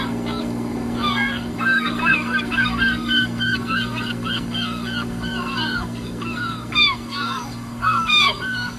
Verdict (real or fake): fake